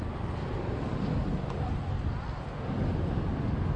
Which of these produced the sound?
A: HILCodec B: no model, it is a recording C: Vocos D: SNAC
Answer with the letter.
B